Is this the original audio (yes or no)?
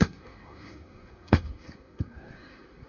no